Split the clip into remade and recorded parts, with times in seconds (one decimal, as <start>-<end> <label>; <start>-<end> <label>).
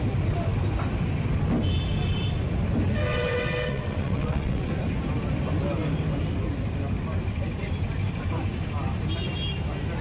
0.0-3.1 recorded; 3.1-4.7 remade; 4.7-10.0 recorded